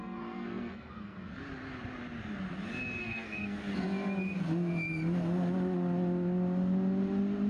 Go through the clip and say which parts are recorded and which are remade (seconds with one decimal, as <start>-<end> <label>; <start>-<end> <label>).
0.0-1.4 remade; 1.4-3.0 recorded; 3.0-3.6 remade; 3.6-7.5 recorded